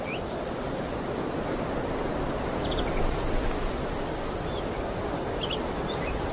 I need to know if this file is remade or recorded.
recorded